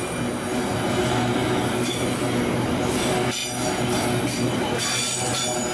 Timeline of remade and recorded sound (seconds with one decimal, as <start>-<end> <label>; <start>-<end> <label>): 0.0-5.7 recorded